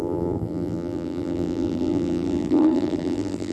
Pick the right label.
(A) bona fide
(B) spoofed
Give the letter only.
B